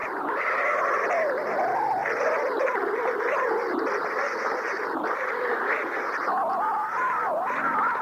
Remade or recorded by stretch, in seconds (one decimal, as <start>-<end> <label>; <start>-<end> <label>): 0.0-8.0 recorded